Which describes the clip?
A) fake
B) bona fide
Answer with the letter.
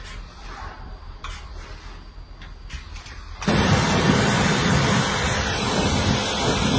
A